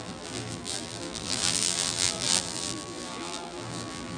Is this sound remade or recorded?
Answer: remade